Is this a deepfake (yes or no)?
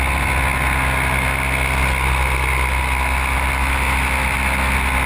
no